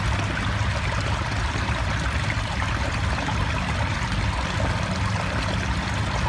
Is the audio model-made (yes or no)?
no